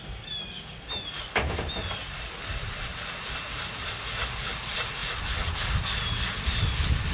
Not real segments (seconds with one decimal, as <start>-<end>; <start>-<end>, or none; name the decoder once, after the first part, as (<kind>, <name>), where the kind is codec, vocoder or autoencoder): none